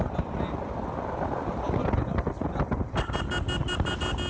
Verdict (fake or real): real